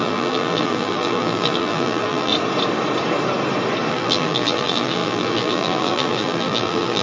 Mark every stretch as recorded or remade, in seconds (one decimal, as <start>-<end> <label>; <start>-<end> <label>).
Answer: 0.0-2.3 remade; 2.3-3.9 recorded; 3.9-7.0 remade